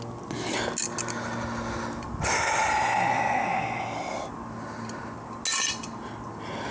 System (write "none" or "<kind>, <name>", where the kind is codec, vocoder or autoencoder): none